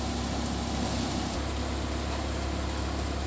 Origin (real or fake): real